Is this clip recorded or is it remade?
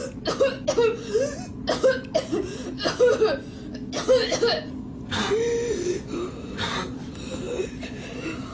recorded